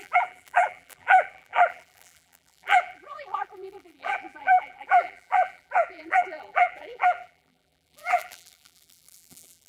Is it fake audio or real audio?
fake